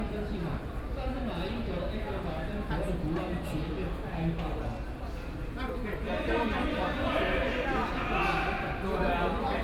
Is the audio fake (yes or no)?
no